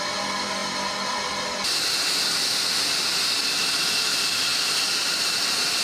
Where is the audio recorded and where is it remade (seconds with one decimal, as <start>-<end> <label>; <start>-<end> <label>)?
0.0-5.8 recorded